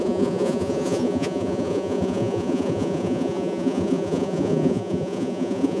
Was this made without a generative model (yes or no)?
no